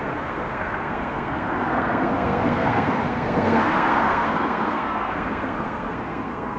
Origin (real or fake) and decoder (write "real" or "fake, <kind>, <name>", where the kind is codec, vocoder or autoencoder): fake, codec, SNAC